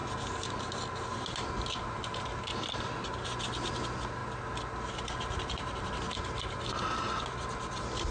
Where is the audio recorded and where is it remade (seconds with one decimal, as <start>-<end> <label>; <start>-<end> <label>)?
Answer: 0.0-2.9 remade; 2.9-8.1 recorded

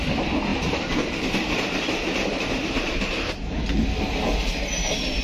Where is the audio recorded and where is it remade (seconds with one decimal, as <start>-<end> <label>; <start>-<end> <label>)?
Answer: 0.0-0.5 recorded; 0.5-3.6 remade; 3.6-5.2 recorded